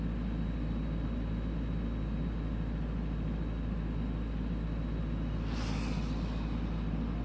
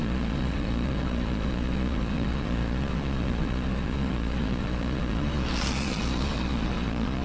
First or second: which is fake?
second